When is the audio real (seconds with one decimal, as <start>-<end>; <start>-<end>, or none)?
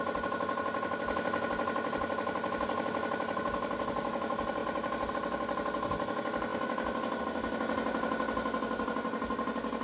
0.0-9.8